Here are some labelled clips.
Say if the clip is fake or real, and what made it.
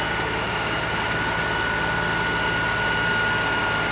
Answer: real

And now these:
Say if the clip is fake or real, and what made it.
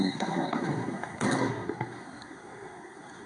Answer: fake, codec, SNAC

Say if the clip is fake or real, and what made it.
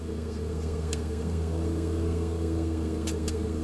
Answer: fake, codec, SNAC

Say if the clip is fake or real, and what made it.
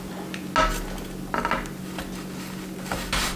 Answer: real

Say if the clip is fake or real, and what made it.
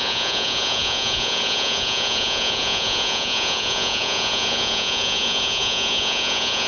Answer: fake, vocoder, Vocos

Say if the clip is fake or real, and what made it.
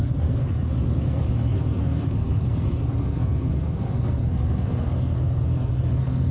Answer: fake, codec, SNAC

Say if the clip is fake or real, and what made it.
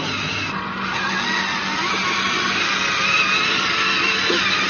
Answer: real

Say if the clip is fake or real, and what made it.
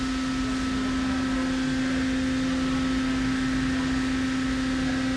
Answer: real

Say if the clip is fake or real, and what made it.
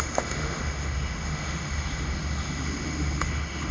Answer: fake, autoencoder, DAC-VAE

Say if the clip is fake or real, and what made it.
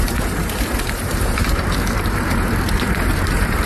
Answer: fake, vocoder, BigVGAN v2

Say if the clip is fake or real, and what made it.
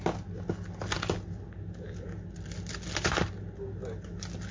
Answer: real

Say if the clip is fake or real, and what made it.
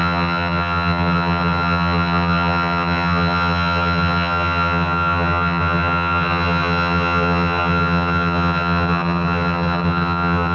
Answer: fake, vocoder, HiFi-GAN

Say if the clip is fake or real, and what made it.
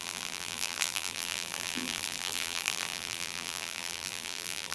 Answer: fake, vocoder, BigVGAN v2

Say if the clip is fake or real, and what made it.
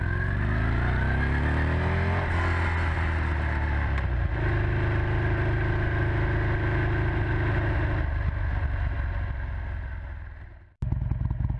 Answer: real